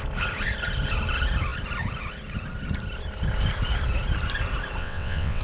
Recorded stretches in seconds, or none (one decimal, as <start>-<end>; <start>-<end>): 0.0-4.8